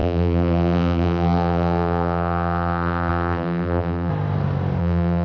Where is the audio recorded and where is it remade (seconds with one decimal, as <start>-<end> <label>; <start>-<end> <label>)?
0.0-4.1 remade; 4.1-4.8 recorded; 4.8-5.2 remade